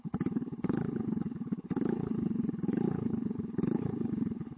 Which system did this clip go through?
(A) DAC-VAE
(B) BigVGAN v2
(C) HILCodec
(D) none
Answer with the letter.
C